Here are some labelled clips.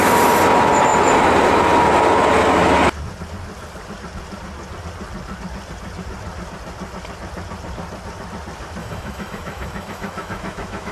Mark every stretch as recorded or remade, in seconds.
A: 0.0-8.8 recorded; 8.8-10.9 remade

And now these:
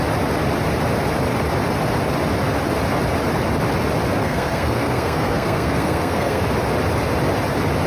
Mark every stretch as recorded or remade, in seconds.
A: 0.0-4.2 recorded; 4.2-6.4 remade; 6.4-7.9 recorded

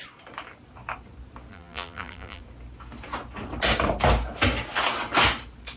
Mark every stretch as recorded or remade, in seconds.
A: 0.0-1.5 recorded; 1.5-2.4 remade; 2.4-5.8 recorded

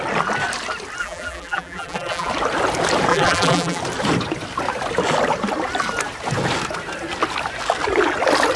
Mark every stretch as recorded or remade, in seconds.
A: 0.0-1.0 recorded; 1.0-2.3 remade; 2.3-3.1 recorded; 3.1-3.8 remade; 3.8-8.6 recorded

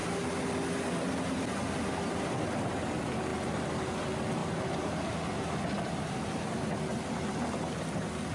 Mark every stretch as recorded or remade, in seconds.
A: 0.0-8.3 recorded

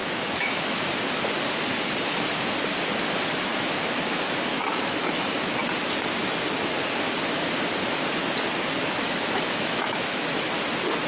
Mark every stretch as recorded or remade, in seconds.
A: 0.0-0.9 remade; 0.9-3.5 recorded; 3.5-5.6 remade; 5.6-8.8 recorded; 8.8-10.4 remade; 10.4-11.1 recorded

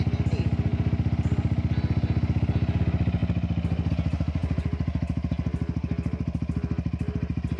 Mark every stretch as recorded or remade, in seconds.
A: 0.0-7.6 recorded

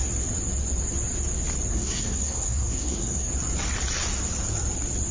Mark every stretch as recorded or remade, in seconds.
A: 0.0-1.7 recorded; 1.7-3.3 remade; 3.3-5.1 recorded